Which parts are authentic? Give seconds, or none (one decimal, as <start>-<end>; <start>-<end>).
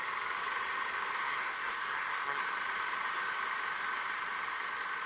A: 0.0-1.2; 2.4-5.1